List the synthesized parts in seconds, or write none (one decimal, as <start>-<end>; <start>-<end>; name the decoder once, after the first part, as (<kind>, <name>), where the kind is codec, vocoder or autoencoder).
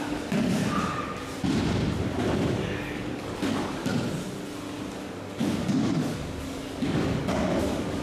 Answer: 0.0-0.6 (codec, DAC); 2.4-3.9; 5.0-8.0